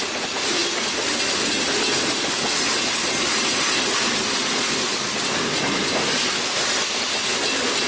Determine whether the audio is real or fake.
real